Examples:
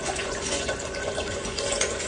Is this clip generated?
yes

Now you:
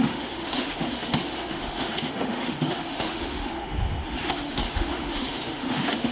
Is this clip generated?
yes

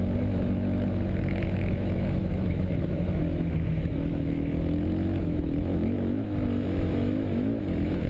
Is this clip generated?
yes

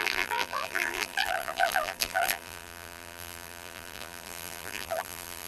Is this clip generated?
yes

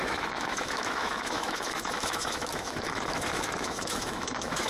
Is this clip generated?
yes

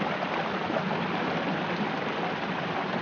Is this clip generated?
no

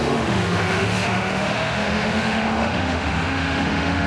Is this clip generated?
yes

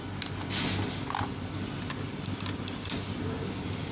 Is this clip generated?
no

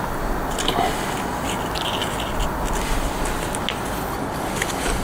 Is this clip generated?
no